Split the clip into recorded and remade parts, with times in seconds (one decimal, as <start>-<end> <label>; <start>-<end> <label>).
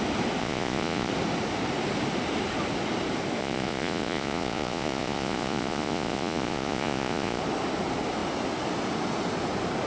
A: 0.0-0.4 recorded; 0.4-1.1 remade; 1.1-3.4 recorded; 3.4-7.4 remade; 7.4-9.9 recorded